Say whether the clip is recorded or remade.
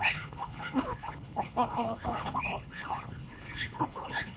remade